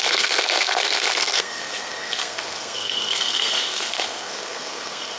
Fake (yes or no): yes